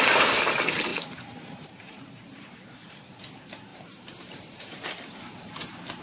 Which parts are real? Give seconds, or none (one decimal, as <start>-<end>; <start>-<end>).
0.0-0.9; 3.2-3.7; 5.0-6.0